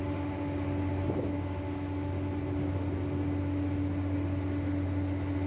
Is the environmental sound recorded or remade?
recorded